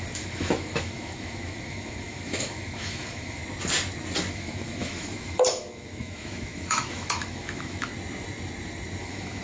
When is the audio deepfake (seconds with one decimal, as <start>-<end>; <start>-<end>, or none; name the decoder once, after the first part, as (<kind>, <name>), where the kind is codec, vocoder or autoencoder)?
0.0-3.4 (autoencoder, DAC-VAE); 4.3-7.9; 9.0-9.4

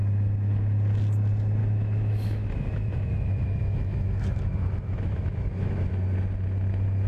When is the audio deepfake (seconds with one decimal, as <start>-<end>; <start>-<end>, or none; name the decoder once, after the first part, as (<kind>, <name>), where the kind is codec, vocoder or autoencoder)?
1.6-5.9 (autoencoder, DAC-VAE)